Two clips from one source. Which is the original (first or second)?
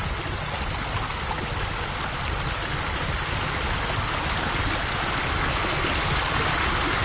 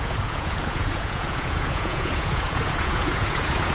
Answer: first